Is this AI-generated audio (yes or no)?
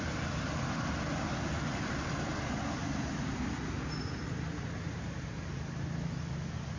no